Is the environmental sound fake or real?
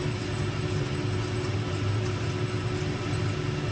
real